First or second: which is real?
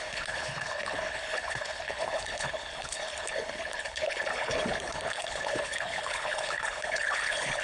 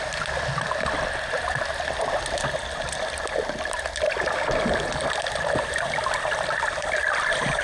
second